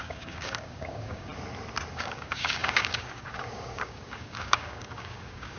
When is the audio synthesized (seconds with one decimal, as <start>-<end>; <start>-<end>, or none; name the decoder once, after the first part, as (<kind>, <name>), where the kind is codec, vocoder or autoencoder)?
0.0-1.3 (codec, DAC); 1.9-5.6